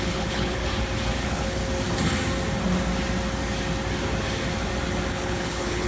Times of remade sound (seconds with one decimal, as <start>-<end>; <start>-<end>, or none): 0.0-0.6; 1.2-1.6; 5.1-5.9